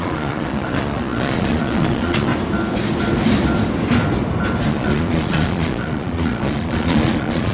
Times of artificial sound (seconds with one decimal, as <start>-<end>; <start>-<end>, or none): 0.0-2.3; 4.7-7.5